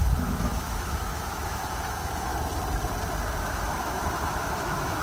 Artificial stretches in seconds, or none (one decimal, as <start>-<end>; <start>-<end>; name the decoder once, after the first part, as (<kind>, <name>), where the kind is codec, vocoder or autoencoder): 0.0-2.3 (autoencoder, DAC-VAE); 3.4-5.0